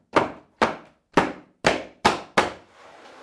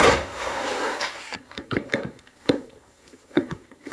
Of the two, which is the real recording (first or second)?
first